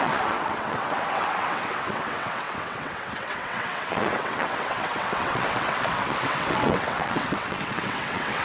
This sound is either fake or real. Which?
fake